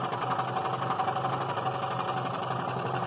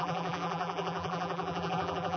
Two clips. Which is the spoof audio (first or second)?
second